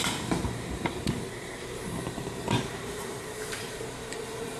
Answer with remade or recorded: remade